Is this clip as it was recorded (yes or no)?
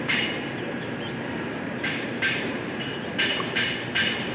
no